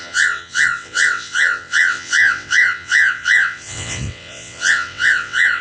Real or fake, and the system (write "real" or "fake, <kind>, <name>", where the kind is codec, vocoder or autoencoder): fake, vocoder, WaveNeXt